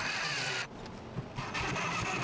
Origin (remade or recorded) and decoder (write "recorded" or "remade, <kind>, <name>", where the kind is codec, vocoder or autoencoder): recorded